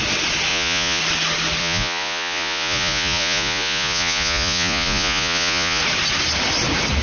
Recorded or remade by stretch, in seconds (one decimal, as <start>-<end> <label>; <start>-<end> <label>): 0.0-0.5 recorded; 0.5-1.0 remade; 1.0-1.6 recorded; 1.6-5.8 remade; 5.8-7.0 recorded